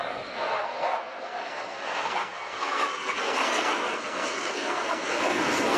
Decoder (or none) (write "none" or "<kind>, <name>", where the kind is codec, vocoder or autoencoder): codec, SNAC